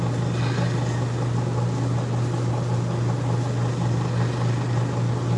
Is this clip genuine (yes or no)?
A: yes